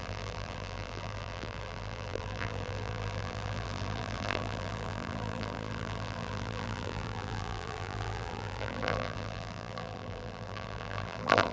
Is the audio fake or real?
fake